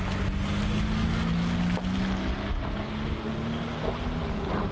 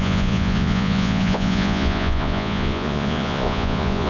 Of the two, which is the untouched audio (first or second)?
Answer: first